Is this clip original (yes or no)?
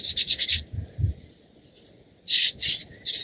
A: yes